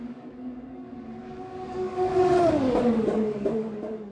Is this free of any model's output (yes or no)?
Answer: no